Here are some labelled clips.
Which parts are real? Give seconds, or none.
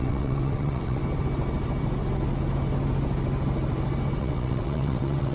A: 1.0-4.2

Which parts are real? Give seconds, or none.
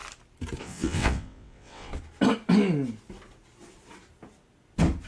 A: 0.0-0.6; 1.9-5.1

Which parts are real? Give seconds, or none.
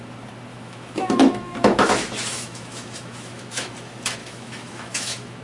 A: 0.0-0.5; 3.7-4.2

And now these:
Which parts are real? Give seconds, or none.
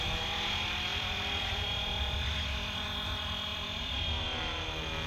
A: 0.0-0.9; 2.0-3.5; 4.2-5.1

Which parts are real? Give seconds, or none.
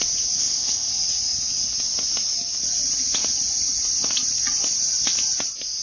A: 0.0-0.4; 0.9-5.8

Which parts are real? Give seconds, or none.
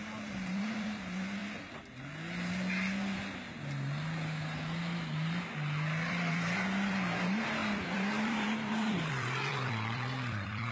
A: 1.4-6.1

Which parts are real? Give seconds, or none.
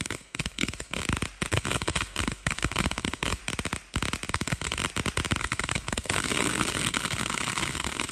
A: 1.0-1.5; 3.4-4.3; 4.8-5.4